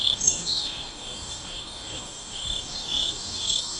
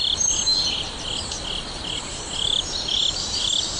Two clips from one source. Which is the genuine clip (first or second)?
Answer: second